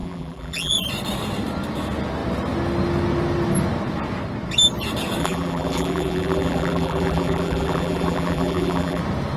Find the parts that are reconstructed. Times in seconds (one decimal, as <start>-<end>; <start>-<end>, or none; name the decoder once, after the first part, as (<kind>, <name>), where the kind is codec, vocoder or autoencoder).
0.0-0.7 (vocoder, BigVGAN v2); 5.2-9.0